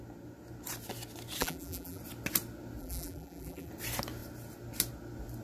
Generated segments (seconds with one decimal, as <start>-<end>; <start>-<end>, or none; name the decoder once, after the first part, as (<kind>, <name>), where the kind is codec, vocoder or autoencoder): 1.4-2.0 (vocoder, BigVGAN v2); 2.8-3.7